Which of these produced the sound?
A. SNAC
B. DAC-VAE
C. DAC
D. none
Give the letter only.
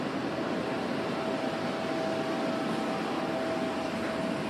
D